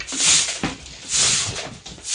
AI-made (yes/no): no